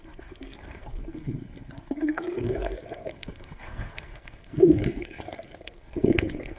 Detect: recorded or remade remade